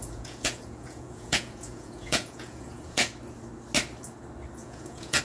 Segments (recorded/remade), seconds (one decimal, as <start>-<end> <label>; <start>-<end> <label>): 0.0-3.1 remade; 3.1-4.6 recorded; 4.6-5.2 remade